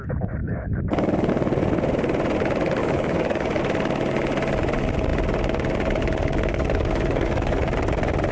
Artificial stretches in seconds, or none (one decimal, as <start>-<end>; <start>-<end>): 0.4-1.3; 2.8-3.6; 6.5-7.7